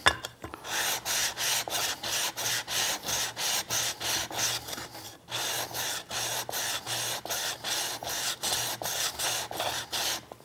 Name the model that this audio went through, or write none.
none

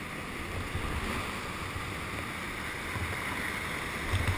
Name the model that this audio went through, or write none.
none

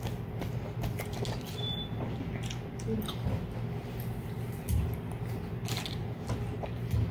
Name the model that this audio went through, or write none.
none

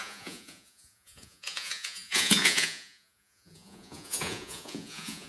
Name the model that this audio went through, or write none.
vocoder, Vocos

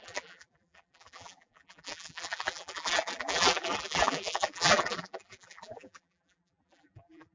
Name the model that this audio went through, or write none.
vocoder, BigVGAN v2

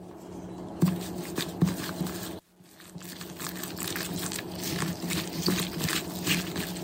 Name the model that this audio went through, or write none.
none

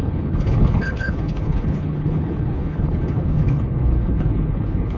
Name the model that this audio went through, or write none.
codec, HILCodec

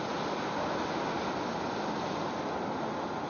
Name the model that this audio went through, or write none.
none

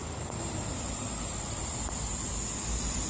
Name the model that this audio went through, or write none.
none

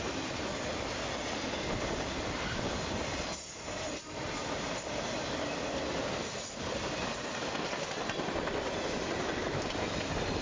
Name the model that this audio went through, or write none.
none